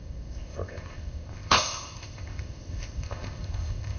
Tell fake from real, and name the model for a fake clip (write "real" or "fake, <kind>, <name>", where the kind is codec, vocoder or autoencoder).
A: fake, codec, ZipCodec